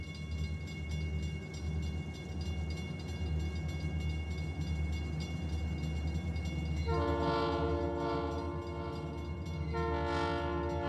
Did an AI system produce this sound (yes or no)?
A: no